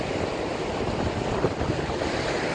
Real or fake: real